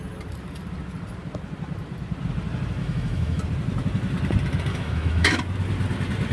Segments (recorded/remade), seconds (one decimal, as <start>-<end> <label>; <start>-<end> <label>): 0.0-2.8 recorded; 2.8-3.4 remade; 3.4-4.7 recorded; 4.7-5.4 remade; 5.4-6.3 recorded